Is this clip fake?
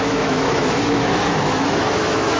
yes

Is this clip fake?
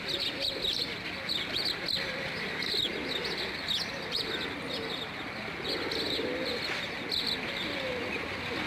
no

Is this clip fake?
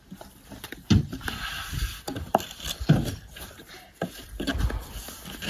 no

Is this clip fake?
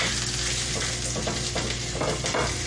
no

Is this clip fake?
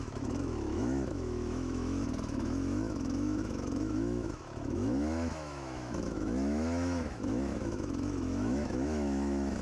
yes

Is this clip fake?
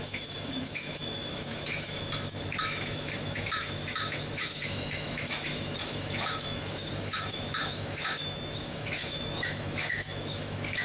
yes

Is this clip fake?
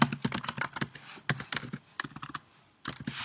no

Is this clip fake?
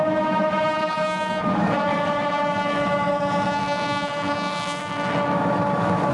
yes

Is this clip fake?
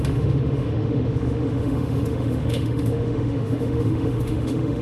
yes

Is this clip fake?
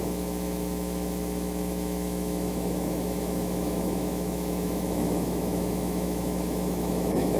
yes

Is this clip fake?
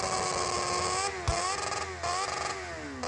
no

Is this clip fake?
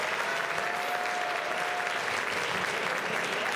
no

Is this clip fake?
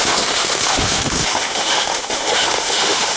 yes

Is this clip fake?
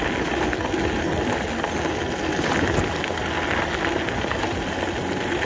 no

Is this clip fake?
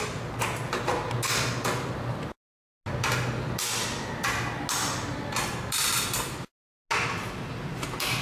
no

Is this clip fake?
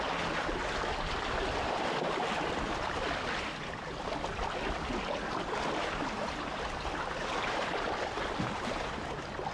no